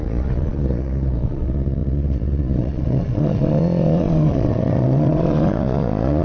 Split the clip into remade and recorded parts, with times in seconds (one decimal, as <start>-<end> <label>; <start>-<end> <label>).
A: 0.0-6.2 remade